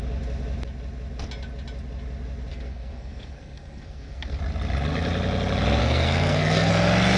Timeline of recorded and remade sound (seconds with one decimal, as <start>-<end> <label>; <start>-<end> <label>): 0.0-2.5 recorded; 2.5-4.4 remade; 4.4-5.8 recorded; 5.8-6.7 remade; 6.7-7.2 recorded